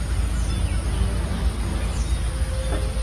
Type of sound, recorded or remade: recorded